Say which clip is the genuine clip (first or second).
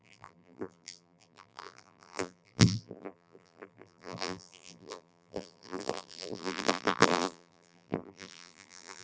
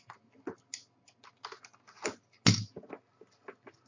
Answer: second